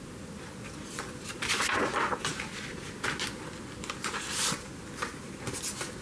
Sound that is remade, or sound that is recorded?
recorded